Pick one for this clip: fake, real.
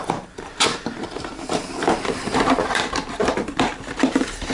fake